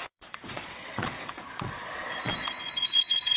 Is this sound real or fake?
fake